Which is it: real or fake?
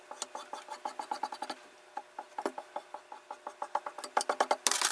real